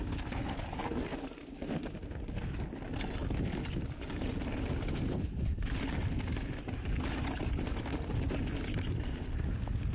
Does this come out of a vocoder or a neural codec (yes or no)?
no